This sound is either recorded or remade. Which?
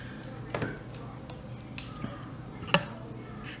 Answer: recorded